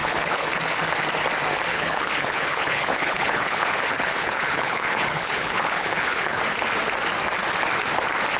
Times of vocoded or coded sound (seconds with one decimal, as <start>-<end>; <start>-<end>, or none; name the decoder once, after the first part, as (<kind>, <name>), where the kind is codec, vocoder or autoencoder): 0.0-0.5 (codec, HILCodec); 1.7-6.4